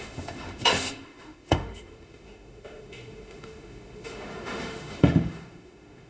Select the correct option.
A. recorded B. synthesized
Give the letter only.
B